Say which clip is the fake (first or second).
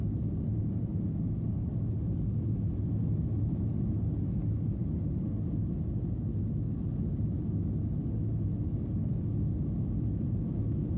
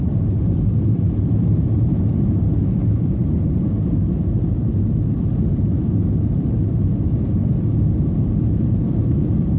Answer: second